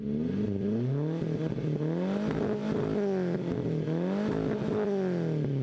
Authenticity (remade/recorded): recorded